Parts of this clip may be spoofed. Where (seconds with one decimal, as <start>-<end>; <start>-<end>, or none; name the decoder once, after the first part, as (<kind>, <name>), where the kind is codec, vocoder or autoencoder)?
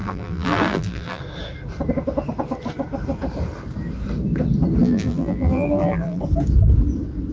0.0-1.2 (vocoder, BigVGAN v2); 4.8-6.2